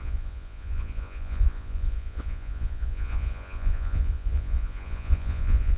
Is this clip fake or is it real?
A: fake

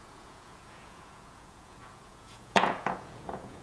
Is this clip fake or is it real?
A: fake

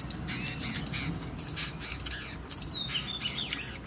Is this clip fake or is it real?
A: real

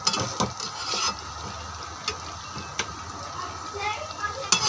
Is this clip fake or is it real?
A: real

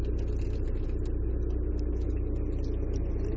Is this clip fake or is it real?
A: real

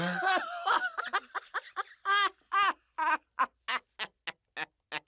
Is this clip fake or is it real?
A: real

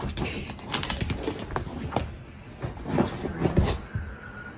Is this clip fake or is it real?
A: real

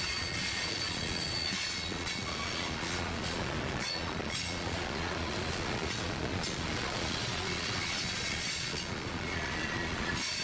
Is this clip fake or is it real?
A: fake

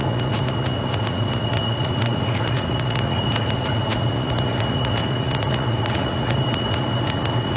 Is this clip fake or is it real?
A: fake